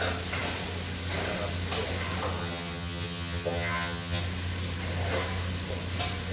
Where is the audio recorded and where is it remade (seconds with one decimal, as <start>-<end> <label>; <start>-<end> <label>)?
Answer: 0.0-2.4 recorded; 2.4-4.2 remade; 4.2-6.3 recorded